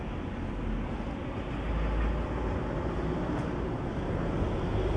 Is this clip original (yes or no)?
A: yes